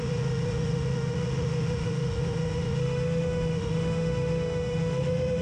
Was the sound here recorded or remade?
remade